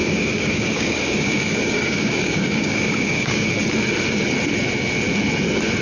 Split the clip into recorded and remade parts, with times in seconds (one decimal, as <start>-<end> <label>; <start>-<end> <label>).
0.0-3.5 remade; 3.5-5.8 recorded